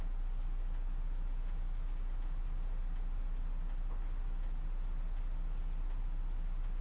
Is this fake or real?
real